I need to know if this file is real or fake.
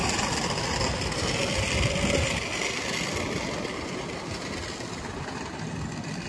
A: real